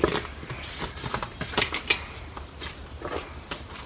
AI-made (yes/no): no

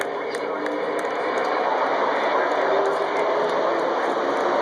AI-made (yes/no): no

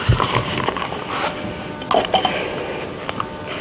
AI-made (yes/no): no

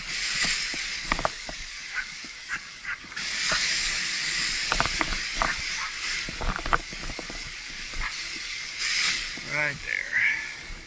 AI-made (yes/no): yes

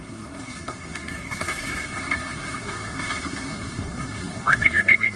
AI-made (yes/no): yes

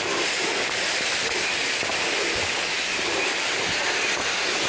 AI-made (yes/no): no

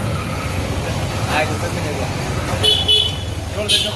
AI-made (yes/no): no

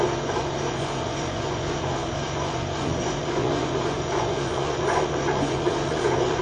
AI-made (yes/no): yes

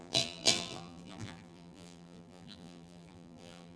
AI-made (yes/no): yes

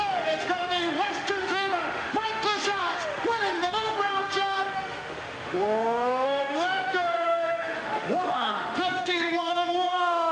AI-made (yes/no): yes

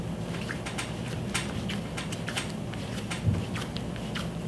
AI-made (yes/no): no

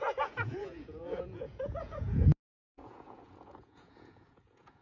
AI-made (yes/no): yes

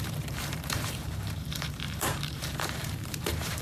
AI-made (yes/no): yes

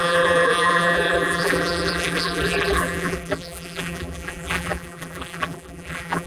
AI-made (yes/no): yes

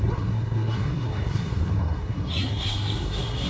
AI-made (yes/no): yes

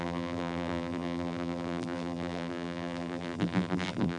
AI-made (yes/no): yes